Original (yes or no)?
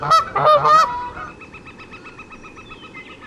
yes